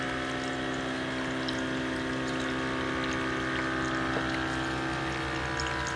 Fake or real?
real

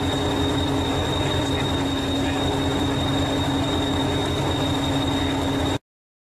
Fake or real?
real